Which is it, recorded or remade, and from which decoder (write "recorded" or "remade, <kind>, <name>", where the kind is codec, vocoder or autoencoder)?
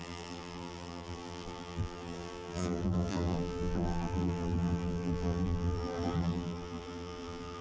remade, vocoder, BigVGAN v2